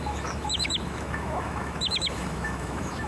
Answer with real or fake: fake